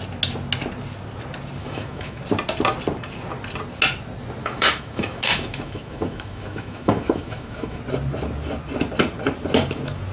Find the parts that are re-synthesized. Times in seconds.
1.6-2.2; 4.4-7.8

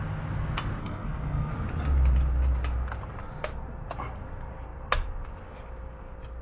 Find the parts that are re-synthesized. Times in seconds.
0.8-1.5

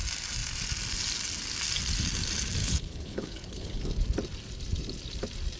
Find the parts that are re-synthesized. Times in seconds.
2.6-3.8

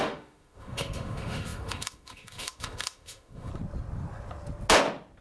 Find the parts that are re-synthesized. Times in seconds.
0.0-3.5